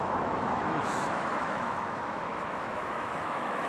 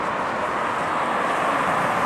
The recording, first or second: second